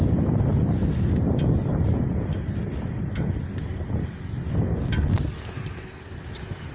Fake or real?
real